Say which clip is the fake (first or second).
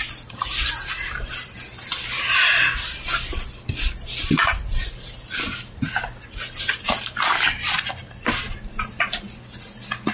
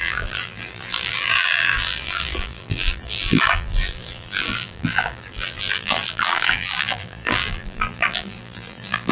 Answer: second